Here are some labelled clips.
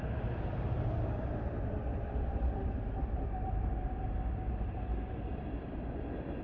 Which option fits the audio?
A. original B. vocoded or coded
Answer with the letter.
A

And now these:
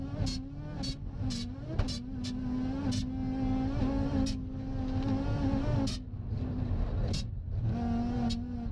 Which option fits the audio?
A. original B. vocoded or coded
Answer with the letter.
A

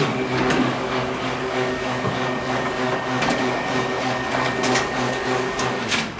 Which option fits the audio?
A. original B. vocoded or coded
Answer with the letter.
B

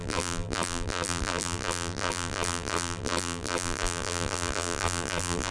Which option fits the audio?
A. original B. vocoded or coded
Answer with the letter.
B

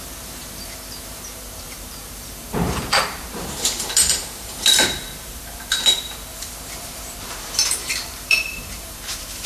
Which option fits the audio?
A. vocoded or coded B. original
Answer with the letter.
A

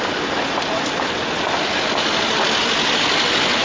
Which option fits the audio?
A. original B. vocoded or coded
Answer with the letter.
A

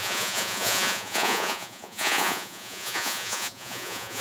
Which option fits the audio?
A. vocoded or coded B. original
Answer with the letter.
A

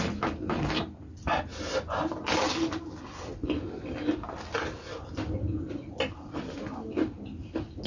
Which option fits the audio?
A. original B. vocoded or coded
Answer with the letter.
A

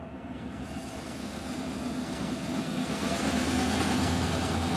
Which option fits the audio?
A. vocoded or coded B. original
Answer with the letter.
A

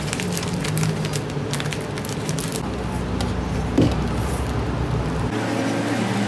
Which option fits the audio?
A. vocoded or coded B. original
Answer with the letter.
B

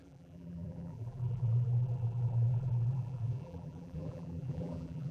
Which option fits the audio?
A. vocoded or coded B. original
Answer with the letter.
A